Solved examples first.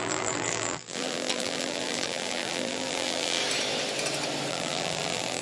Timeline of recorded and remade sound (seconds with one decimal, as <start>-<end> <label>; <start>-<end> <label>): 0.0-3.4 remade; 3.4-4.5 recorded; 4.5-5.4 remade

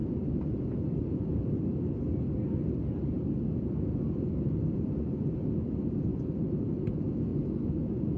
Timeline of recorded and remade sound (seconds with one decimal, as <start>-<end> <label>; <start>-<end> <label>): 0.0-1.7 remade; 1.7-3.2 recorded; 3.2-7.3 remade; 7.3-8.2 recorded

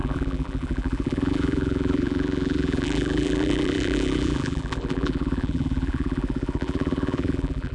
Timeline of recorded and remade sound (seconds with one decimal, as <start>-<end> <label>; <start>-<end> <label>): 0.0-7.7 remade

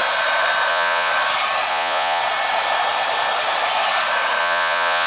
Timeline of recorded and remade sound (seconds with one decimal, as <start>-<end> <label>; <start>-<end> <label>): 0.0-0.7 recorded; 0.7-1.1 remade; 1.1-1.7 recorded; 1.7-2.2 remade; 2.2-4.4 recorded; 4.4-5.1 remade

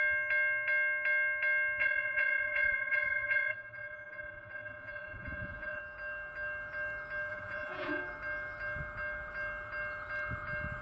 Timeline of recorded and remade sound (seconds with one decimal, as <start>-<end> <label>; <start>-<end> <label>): 0.0-1.8 recorded; 1.8-5.8 remade; 5.8-7.3 recorded; 7.3-8.0 remade; 8.0-10.8 recorded

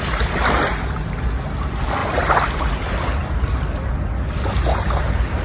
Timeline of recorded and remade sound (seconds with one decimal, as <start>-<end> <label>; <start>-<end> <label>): 0.0-5.4 recorded

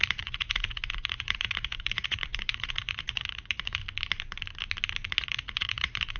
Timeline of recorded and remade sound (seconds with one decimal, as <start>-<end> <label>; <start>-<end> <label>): 0.0-3.8 remade; 3.8-5.2 recorded; 5.2-6.2 remade

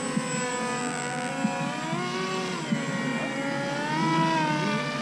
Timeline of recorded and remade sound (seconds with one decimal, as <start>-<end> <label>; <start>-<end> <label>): 0.0-0.8 recorded; 0.8-1.3 remade; 1.3-5.0 recorded